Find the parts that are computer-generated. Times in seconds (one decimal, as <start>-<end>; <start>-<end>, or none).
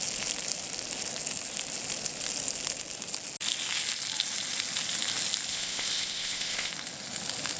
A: 5.5-6.7